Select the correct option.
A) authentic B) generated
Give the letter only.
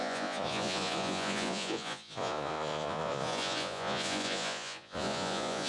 B